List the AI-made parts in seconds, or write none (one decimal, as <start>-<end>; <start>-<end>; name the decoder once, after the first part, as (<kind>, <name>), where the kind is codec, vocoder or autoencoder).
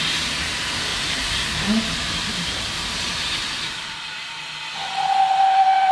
0.9-4.4 (vocoder, BigVGAN v2)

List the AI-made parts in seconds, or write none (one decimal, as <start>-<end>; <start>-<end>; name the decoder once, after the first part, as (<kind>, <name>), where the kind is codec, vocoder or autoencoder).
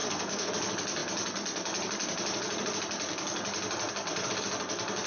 0.0-0.5 (codec, SNAC)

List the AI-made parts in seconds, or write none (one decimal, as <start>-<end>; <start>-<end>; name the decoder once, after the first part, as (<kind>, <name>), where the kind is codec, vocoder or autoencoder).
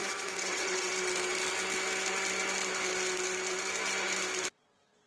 0.0-0.9 (vocoder, WaveNeXt)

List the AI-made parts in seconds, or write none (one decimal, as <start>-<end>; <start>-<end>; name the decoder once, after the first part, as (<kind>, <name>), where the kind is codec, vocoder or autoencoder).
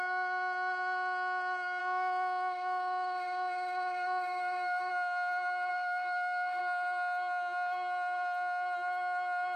1.8-4.9 (autoencoder, DAC-VAE); 5.7-6.6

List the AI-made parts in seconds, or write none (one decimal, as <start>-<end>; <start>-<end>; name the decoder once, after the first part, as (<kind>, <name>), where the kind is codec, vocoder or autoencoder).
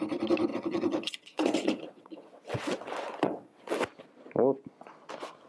0.5-3.8 (vocoder, WaveNeXt)